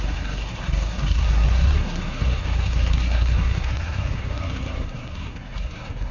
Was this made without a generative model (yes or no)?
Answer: no